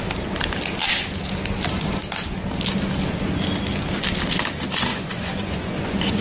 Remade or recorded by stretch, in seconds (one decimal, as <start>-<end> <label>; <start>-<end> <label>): 0.0-4.9 recorded; 4.9-6.2 remade